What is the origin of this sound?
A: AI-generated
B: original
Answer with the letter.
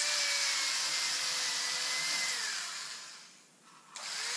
B